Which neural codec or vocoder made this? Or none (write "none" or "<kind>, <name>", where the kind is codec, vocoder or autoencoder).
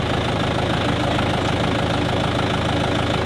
none